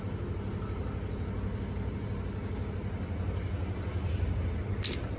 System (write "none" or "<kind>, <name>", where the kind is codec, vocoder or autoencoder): none